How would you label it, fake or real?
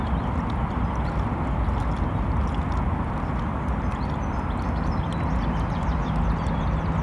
real